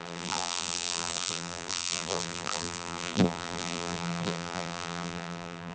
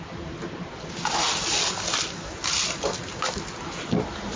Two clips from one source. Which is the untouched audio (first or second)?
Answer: second